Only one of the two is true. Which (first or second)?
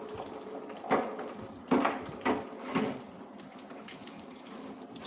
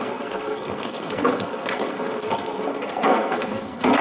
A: first